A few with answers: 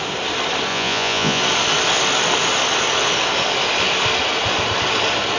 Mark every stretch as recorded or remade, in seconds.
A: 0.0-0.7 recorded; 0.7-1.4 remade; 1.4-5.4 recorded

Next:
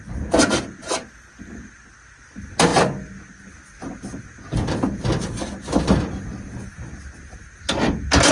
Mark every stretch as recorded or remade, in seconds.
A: 0.0-8.3 recorded

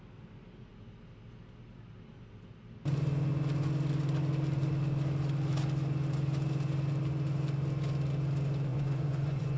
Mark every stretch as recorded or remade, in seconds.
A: 0.0-8.7 recorded; 8.7-9.6 remade